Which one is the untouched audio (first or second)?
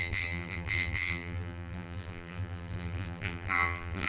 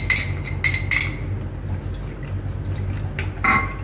second